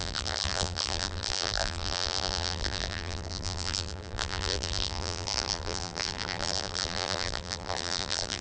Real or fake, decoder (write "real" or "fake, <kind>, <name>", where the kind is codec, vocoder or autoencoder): fake, vocoder, BigVGAN v2